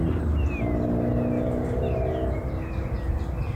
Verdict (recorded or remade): recorded